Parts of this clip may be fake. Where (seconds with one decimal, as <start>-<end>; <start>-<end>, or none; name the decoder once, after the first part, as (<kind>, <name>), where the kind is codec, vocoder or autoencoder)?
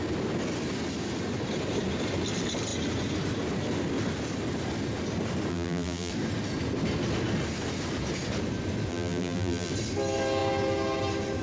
5.5-6.1 (vocoder, BigVGAN v2); 8.9-9.7